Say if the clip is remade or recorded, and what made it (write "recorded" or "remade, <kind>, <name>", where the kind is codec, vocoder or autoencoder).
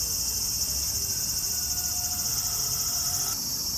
recorded